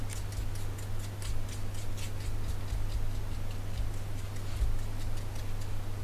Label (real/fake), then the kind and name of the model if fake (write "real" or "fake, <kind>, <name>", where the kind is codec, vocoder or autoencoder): real